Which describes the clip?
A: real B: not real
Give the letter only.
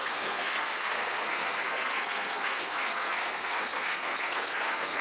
B